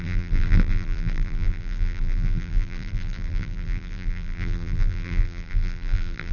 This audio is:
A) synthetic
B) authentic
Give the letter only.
A